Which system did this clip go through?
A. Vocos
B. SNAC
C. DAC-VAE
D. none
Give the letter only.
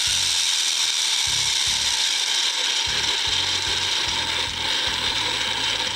D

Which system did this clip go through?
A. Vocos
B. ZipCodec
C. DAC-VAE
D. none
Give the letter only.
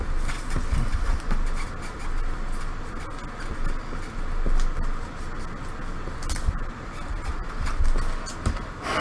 D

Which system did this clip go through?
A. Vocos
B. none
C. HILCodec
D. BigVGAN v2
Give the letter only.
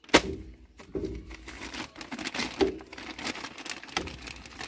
B